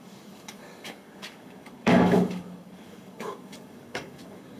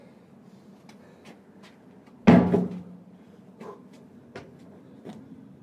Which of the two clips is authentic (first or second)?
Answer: second